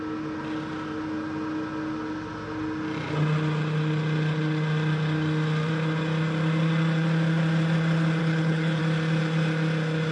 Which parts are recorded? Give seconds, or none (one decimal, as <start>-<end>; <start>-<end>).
0.0-8.2; 8.8-10.1